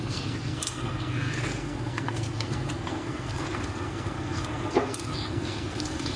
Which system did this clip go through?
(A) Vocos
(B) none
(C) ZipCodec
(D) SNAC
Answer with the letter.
D